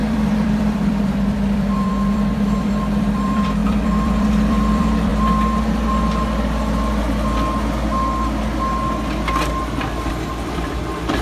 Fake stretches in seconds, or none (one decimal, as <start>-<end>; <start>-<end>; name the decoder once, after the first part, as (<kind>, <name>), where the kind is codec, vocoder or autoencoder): 0.0-5.1 (vocoder, BigVGAN v2); 10.1-11.2